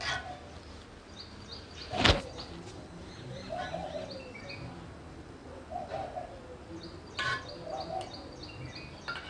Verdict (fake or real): real